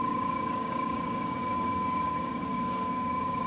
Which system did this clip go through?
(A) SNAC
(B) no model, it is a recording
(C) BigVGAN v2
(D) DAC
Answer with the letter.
D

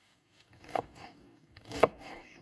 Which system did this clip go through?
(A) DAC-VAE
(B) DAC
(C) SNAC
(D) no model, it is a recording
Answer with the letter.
B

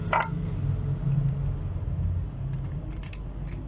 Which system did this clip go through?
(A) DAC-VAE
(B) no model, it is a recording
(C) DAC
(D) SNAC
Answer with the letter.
B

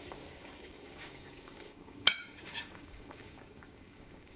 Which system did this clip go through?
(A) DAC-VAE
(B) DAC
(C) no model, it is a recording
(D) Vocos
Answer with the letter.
B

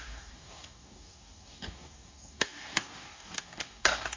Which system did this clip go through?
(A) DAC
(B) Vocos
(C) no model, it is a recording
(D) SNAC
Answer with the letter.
A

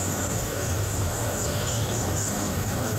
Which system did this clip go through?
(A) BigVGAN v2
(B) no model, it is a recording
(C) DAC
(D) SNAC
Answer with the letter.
C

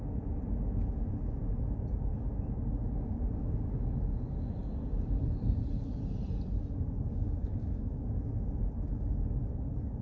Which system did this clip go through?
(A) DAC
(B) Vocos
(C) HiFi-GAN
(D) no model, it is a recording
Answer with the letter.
D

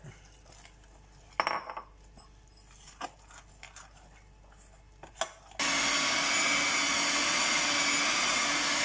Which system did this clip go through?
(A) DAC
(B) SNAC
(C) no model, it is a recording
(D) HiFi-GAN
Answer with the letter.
C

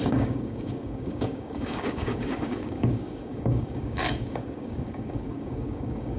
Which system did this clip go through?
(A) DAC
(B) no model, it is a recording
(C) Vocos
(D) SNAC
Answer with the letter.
A